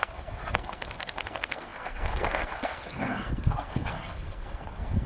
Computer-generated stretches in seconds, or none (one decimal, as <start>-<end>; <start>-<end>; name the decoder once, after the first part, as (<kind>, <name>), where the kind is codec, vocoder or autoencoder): 0.0-5.1 (codec, SNAC)

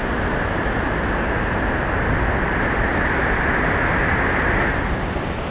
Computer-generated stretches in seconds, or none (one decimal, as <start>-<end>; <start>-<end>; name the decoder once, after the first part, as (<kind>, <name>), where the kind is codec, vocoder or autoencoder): none

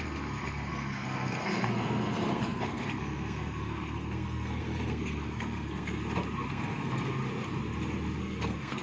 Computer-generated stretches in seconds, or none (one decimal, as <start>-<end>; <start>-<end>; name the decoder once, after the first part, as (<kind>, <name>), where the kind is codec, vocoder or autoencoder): 0.0-6.0 (codec, SNAC); 6.5-7.2; 8.2-8.8